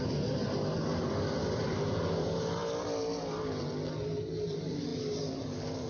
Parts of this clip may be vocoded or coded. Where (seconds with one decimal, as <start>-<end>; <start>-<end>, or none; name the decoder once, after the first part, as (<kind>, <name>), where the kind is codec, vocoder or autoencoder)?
none